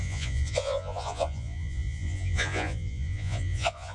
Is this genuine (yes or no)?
no